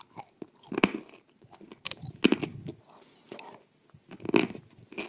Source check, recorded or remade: recorded